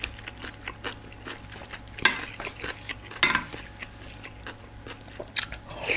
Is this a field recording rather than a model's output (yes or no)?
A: yes